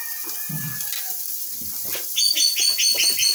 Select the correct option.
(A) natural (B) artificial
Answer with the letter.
A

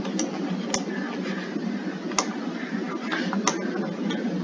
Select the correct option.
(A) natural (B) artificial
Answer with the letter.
A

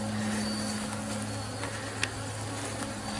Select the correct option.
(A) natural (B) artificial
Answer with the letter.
A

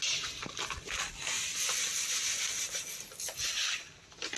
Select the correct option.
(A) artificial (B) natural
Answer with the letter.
B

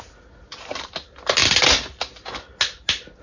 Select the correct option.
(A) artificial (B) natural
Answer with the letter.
B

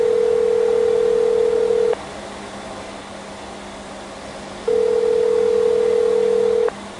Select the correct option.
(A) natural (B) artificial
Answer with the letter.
A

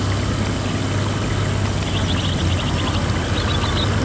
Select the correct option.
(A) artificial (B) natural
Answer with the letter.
B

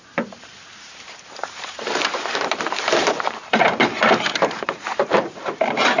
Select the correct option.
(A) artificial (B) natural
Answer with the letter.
A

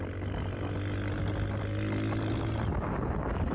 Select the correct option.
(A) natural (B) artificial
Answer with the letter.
A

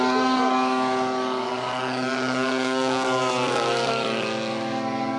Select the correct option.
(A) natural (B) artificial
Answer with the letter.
B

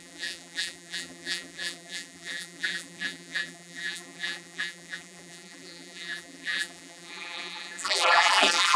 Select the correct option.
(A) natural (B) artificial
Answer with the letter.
B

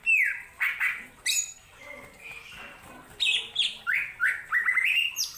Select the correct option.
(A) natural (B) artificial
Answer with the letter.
A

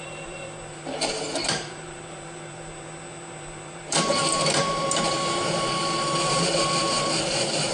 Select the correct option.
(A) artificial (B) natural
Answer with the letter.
A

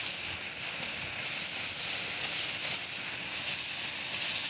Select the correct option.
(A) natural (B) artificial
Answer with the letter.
A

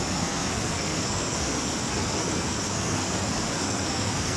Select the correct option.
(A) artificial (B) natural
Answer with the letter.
A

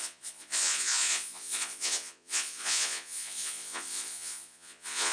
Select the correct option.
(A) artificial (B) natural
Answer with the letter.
A